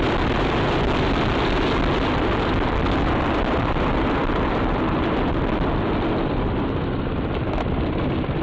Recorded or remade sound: remade